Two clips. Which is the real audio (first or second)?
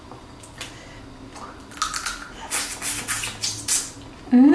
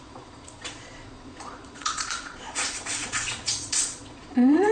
first